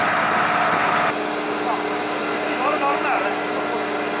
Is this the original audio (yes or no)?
yes